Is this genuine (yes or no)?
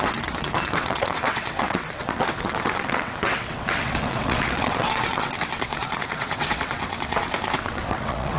no